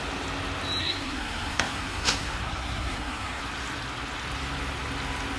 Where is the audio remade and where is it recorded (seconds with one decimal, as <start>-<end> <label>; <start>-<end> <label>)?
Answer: 0.0-0.8 recorded; 0.8-3.4 remade; 3.4-5.4 recorded